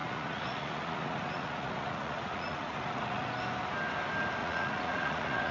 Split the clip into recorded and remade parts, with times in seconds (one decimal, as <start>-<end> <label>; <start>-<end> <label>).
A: 0.0-3.3 remade; 3.3-4.4 recorded; 4.4-5.5 remade